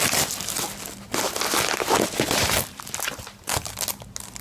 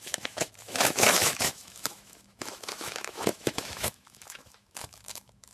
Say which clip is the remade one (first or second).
second